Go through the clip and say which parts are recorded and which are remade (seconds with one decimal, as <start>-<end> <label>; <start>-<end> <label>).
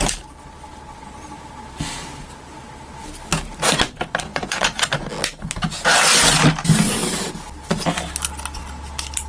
0.0-4.3 recorded; 4.3-5.1 remade; 5.1-9.3 recorded